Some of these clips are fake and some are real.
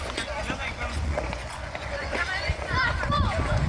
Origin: fake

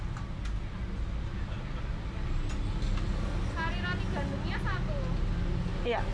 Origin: real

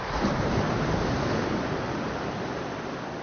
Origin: real